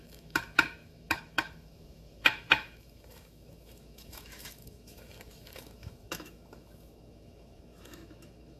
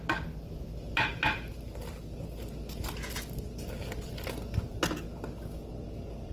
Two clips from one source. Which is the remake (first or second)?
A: first